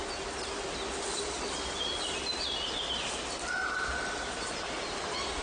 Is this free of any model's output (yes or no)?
yes